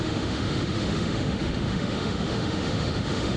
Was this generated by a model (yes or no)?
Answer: yes